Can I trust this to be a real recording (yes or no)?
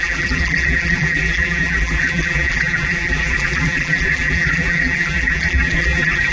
no